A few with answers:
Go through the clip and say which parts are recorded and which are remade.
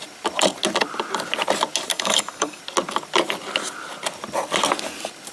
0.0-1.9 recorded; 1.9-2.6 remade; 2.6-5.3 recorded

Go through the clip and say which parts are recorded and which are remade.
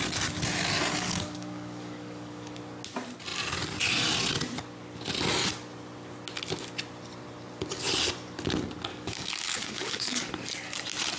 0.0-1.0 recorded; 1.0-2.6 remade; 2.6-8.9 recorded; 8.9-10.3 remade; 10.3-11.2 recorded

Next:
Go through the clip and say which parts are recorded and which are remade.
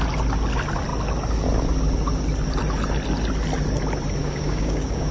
0.0-4.2 recorded; 4.2-5.1 remade